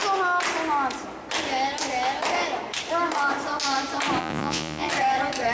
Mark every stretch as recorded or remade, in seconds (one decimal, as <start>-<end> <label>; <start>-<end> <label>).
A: 0.0-4.2 recorded; 4.2-4.9 remade; 4.9-5.5 recorded